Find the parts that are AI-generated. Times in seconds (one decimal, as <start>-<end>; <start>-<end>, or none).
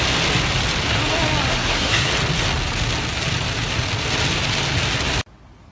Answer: 1.5-2.1